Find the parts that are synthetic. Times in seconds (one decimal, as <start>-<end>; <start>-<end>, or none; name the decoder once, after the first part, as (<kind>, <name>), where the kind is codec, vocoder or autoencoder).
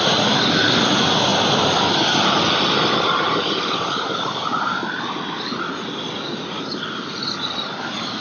none